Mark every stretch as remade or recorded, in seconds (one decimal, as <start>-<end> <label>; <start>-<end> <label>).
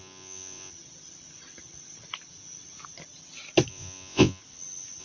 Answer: 0.0-0.7 remade; 0.7-3.7 recorded; 3.7-4.4 remade; 4.4-5.0 recorded